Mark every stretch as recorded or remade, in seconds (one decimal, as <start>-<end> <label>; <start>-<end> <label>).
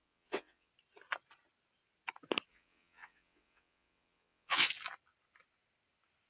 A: 0.0-0.7 remade; 0.7-2.5 recorded; 2.5-4.7 remade; 4.7-6.3 recorded